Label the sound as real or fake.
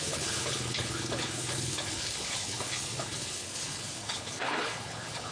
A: fake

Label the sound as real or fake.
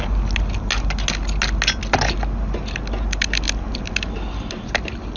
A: real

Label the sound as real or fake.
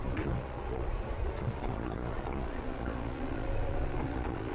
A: fake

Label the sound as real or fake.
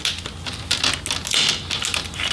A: real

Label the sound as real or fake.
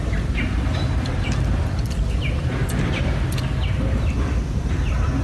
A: real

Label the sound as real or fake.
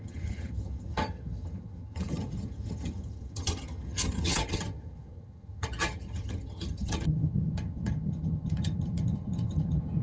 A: fake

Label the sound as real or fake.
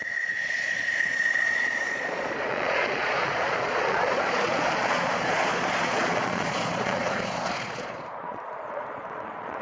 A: fake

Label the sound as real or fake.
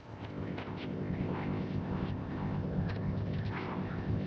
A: fake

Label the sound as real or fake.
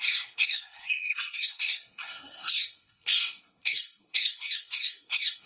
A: fake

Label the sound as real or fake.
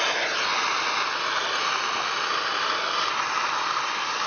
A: real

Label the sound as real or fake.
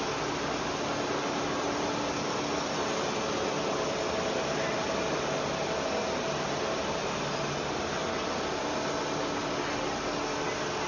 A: real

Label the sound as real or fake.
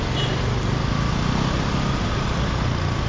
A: real